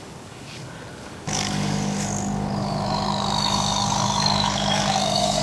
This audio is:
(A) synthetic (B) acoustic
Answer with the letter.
A